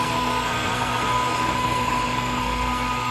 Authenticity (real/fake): fake